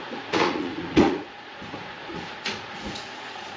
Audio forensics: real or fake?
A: fake